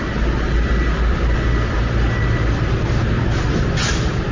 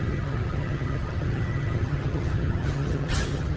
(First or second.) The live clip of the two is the first